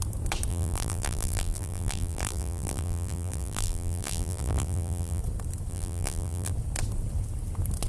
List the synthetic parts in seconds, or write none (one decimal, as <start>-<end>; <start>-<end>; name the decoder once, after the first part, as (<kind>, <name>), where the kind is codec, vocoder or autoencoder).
0.5-5.2 (vocoder, BigVGAN v2); 5.7-6.5